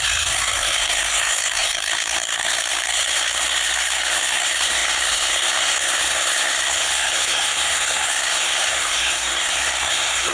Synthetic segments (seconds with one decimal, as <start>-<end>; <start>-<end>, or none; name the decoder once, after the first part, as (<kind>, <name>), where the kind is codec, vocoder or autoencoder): 0.0-10.3 (codec, SNAC)